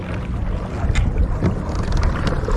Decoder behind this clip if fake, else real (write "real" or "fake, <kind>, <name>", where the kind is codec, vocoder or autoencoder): real